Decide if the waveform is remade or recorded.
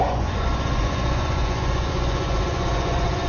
remade